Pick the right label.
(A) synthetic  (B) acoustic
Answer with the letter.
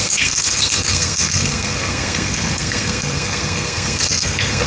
A